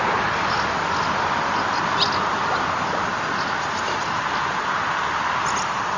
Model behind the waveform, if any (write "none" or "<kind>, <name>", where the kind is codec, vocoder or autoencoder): none